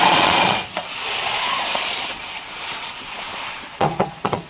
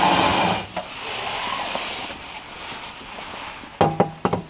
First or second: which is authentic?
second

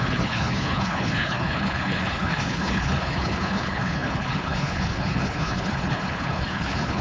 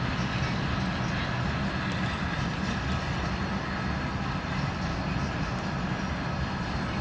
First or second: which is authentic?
second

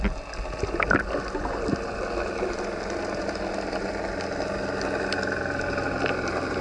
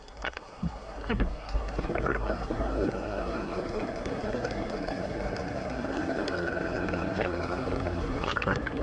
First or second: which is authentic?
first